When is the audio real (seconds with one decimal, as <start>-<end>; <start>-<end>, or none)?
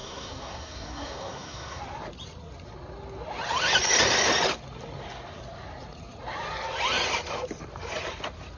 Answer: 1.8-8.6